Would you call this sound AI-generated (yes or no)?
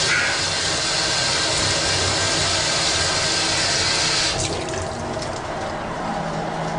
no